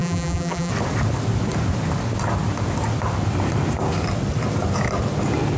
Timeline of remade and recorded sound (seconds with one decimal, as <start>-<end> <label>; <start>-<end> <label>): 0.0-0.7 remade; 0.7-5.6 recorded